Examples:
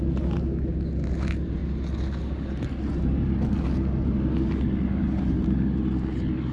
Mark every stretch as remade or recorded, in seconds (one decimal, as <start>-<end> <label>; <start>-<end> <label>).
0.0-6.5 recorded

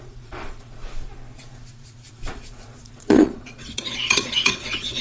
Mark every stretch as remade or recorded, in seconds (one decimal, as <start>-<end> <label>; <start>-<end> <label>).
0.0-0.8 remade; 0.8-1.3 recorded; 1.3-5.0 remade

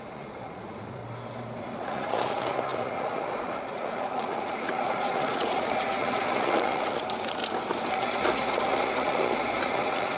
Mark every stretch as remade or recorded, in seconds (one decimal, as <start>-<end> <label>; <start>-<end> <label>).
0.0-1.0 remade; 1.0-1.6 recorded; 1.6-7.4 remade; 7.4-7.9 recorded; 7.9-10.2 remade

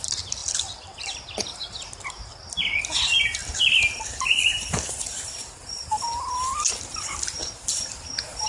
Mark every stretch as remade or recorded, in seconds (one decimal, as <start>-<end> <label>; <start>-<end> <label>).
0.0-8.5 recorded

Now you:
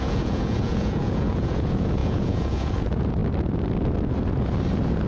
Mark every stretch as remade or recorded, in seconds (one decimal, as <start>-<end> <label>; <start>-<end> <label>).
0.0-3.2 remade; 3.2-5.1 recorded